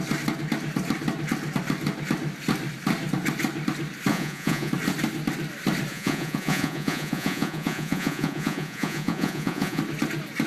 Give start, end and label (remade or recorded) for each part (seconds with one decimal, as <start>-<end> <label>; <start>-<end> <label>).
0.0-4.1 recorded; 4.1-4.7 remade; 4.7-5.9 recorded; 5.9-9.8 remade; 9.8-10.5 recorded